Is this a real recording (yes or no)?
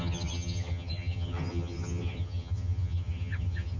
no